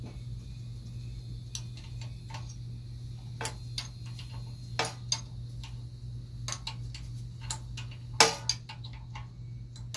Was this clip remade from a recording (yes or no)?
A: no